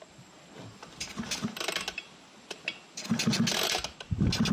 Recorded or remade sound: recorded